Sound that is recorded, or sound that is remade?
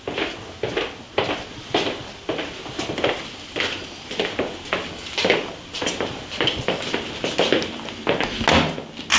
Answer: recorded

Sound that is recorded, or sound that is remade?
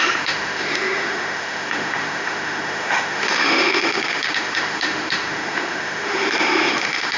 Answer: remade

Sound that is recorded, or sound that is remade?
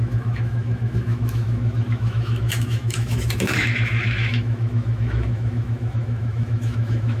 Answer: remade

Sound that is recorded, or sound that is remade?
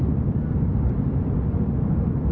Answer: recorded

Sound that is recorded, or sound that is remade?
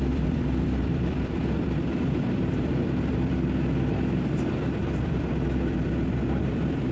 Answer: remade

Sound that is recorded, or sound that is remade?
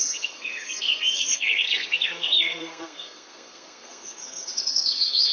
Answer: remade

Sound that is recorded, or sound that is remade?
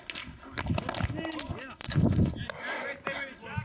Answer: recorded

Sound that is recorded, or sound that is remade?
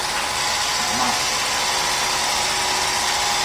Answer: recorded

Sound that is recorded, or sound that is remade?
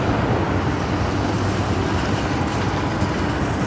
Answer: recorded